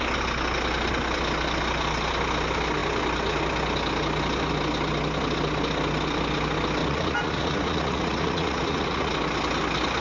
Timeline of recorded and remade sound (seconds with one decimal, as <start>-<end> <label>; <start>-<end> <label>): 0.0-6.8 recorded; 6.8-9.1 remade; 9.1-10.0 recorded